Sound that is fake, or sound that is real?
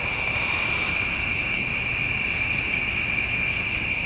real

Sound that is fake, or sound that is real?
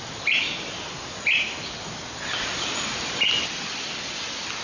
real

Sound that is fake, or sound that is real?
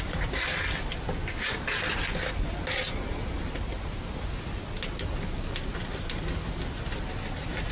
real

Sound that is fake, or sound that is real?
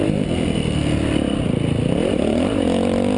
real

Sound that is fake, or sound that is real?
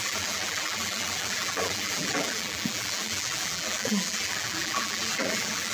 fake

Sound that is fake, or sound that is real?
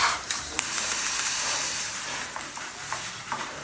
fake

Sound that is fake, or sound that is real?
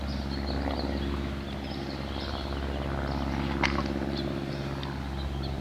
real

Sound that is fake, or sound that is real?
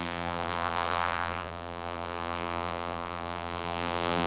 fake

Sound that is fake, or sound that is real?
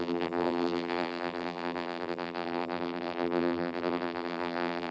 fake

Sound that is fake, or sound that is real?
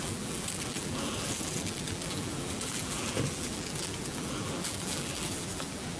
fake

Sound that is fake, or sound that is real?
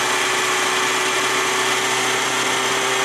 real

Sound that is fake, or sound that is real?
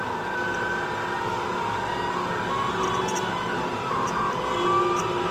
fake